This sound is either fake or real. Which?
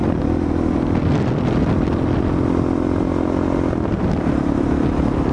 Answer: real